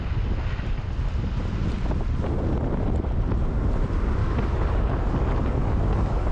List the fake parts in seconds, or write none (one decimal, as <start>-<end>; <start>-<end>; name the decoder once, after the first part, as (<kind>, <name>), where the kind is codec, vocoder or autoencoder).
4.2-6.3 (codec, DAC)